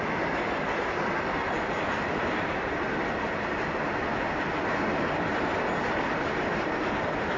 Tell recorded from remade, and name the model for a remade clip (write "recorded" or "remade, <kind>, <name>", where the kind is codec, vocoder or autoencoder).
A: recorded